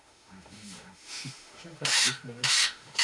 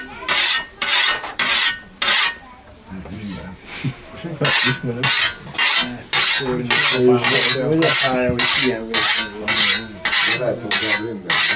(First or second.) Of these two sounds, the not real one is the first